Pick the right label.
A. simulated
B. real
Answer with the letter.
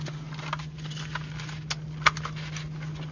B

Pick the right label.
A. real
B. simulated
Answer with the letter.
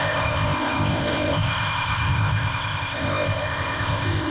B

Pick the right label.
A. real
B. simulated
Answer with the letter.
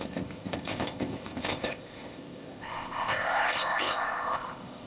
B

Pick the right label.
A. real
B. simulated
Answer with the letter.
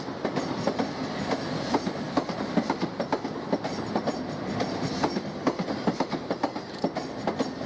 A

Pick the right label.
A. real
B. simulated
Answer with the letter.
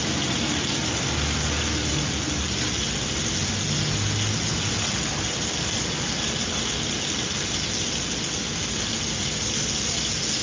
A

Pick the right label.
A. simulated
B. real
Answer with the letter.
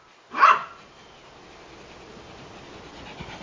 B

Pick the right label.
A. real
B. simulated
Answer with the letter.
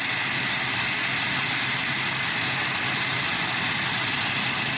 A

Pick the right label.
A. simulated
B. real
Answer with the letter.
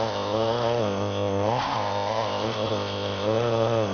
A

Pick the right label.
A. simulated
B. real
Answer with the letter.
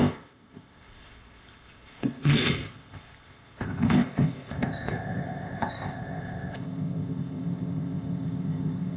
A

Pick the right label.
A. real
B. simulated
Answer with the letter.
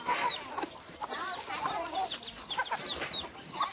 A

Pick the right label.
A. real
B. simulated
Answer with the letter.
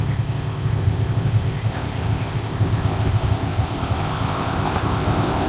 B